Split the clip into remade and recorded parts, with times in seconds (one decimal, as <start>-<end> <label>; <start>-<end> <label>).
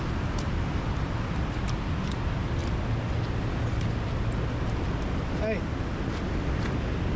0.0-7.2 recorded